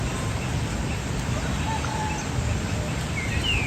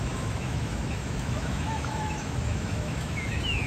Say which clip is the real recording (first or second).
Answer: first